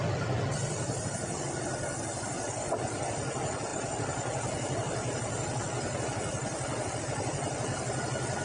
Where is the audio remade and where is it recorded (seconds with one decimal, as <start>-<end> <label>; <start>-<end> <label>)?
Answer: 0.0-8.4 recorded